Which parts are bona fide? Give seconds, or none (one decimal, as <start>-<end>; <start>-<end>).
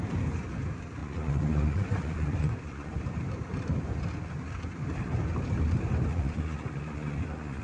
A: 0.0-1.0; 3.0-6.1